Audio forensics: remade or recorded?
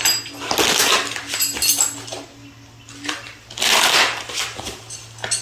recorded